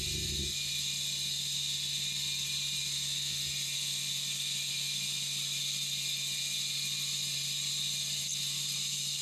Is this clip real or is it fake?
real